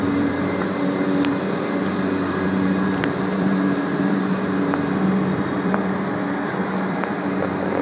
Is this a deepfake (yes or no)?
yes